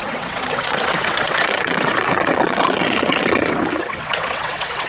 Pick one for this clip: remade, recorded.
remade